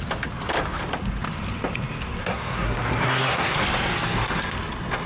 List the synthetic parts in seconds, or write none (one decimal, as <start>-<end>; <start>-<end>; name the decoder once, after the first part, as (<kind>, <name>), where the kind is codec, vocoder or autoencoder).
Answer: 2.2-3.6 (codec, SNAC)